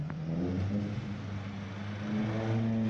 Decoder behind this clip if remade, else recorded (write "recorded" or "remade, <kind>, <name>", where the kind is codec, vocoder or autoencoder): recorded